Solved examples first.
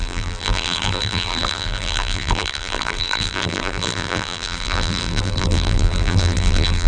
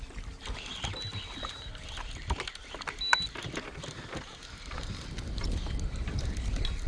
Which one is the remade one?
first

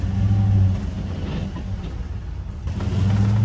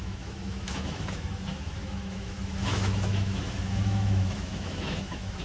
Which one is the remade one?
second